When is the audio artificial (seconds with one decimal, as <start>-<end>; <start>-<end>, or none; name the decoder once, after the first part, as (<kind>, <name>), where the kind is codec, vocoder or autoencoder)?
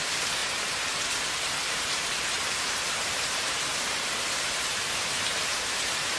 0.0-0.4 (vocoder, BigVGAN v2); 1.7-6.2